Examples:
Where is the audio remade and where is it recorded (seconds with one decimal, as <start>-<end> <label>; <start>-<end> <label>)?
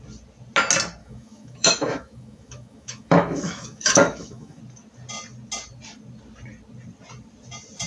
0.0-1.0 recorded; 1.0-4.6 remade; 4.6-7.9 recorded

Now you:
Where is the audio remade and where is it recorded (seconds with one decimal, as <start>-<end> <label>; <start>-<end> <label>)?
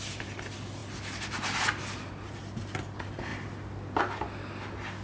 0.0-5.0 recorded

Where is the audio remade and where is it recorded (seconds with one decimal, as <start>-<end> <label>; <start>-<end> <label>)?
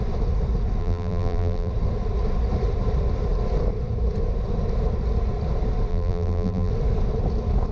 0.0-0.8 recorded; 0.8-1.7 remade; 1.7-5.9 recorded; 5.9-6.7 remade; 6.7-7.7 recorded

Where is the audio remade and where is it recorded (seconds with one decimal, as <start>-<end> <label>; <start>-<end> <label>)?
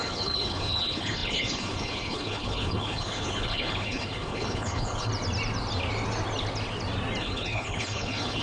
0.0-5.1 remade; 5.1-7.2 recorded; 7.2-8.4 remade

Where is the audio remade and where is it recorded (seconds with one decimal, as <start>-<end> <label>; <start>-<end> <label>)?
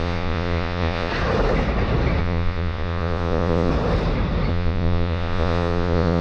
0.0-1.1 remade; 1.1-2.2 recorded; 2.2-3.7 remade; 3.7-4.5 recorded; 4.5-6.2 remade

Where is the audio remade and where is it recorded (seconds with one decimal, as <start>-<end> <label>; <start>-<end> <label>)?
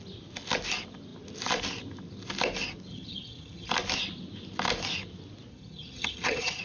0.0-2.9 recorded; 2.9-3.7 remade; 3.7-5.5 recorded; 5.5-6.6 remade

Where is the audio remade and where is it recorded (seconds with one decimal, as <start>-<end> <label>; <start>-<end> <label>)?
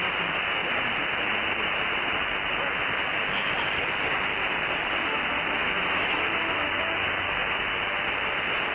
0.0-5.6 recorded; 5.6-6.3 remade; 6.3-8.7 recorded